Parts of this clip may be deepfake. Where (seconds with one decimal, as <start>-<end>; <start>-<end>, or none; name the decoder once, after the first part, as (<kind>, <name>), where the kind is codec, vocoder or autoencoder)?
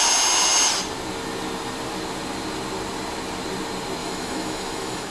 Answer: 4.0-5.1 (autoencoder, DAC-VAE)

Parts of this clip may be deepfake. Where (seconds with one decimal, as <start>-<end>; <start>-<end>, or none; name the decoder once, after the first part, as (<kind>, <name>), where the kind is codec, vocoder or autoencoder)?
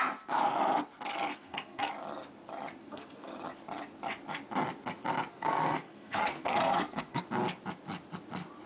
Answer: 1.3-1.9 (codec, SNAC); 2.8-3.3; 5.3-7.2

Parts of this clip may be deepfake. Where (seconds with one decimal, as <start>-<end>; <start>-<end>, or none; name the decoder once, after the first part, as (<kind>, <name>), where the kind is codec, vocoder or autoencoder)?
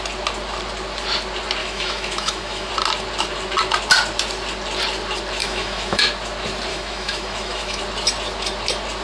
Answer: 1.6-2.7 (autoencoder, DAC-VAE); 5.4-6.0; 6.7-7.8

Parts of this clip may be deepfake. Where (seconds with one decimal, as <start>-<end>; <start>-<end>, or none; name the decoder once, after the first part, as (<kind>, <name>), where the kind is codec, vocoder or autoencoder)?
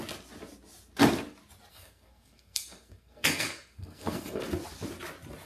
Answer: 1.7-4.4 (codec, SNAC)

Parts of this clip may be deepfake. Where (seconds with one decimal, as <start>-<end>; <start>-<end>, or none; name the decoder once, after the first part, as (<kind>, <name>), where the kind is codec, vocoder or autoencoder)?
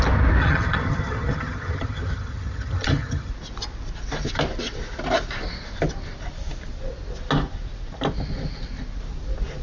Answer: 0.4-3.3 (vocoder, HiFi-GAN)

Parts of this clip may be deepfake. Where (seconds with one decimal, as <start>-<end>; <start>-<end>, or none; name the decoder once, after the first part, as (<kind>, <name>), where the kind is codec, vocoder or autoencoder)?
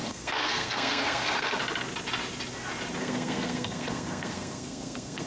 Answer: 0.0-1.6 (codec, SNAC); 3.0-5.3